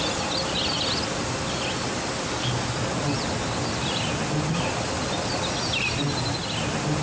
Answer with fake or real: real